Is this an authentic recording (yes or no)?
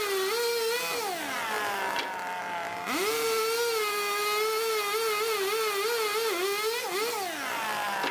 yes